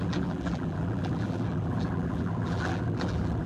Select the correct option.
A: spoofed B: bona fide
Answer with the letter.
A